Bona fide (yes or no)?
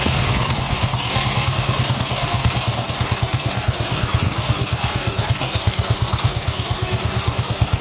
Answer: no